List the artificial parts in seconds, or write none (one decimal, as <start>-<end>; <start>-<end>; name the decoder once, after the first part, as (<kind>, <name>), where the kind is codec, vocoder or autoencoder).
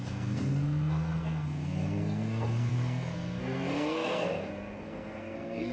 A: 0.0-5.7 (codec, SNAC)